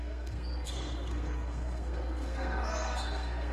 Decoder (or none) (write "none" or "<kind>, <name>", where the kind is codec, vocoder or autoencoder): codec, SNAC